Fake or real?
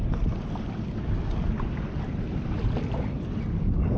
real